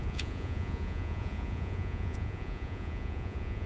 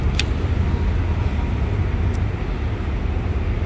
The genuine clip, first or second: second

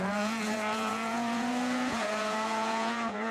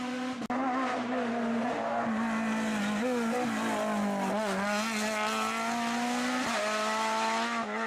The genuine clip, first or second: second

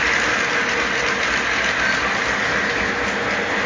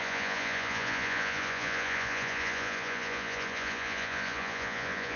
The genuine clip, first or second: first